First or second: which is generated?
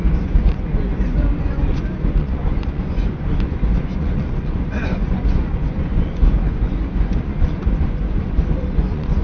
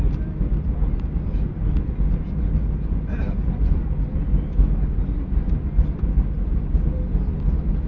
first